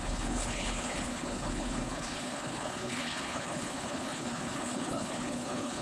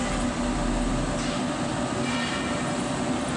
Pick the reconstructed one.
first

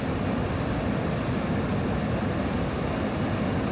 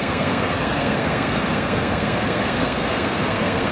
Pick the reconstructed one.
second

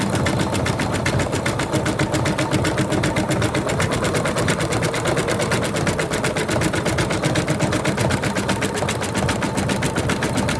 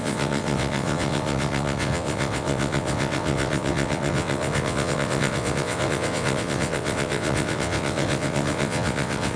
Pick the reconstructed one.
second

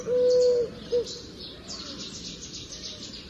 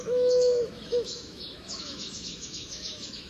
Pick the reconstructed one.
second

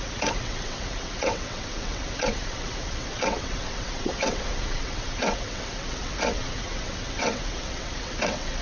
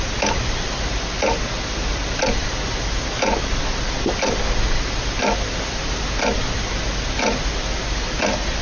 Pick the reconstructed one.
first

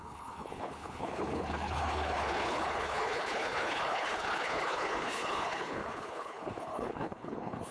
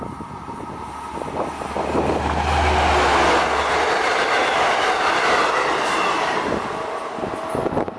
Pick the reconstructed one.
first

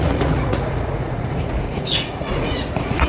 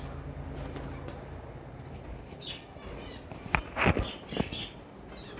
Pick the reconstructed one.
first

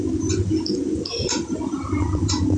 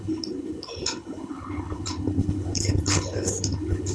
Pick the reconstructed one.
second